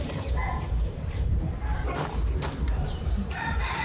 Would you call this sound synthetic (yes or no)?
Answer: yes